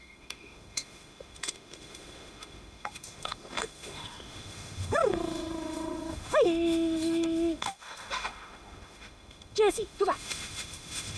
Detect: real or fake fake